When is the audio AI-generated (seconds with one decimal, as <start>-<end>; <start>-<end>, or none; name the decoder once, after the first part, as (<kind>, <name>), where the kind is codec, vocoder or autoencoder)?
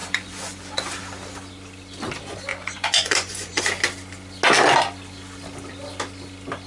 0.0-1.0 (vocoder, Vocos); 2.5-3.6